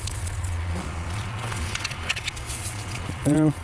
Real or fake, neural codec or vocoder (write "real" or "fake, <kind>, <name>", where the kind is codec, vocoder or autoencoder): fake, vocoder, Vocos